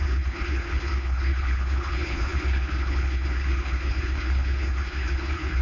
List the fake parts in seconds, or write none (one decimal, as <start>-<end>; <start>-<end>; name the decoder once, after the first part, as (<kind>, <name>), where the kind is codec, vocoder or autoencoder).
0.0-5.6 (codec, HILCodec)

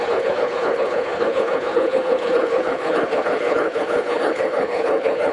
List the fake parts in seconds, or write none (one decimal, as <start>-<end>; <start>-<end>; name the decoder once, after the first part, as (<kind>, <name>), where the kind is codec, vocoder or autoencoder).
0.0-5.3 (codec, HILCodec)

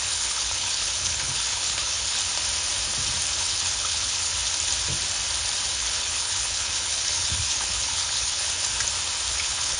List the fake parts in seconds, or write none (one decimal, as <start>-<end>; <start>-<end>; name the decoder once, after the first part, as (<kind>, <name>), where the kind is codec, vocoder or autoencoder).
0.0-2.2 (codec, HILCodec); 3.3-4.3; 5.7-8.7; 9.3-9.8

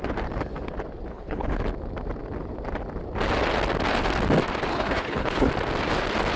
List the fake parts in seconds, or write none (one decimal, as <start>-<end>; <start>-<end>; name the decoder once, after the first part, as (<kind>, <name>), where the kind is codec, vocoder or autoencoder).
1.1-1.6 (codec, HILCodec); 4.7-5.5

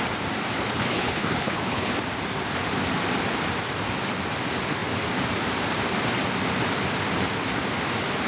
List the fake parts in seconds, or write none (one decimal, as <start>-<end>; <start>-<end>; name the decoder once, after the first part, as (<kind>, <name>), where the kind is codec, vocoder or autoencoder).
0.7-1.9 (codec, HILCodec)

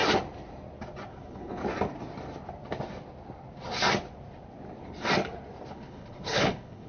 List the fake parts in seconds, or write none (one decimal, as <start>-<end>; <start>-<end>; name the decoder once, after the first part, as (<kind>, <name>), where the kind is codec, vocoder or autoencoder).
1.1-1.6 (codec, HILCodec); 5.7-6.9

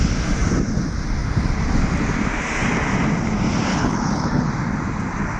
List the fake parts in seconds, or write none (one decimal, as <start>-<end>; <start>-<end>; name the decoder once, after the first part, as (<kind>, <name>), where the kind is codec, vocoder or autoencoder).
3.7-4.5 (codec, HILCodec)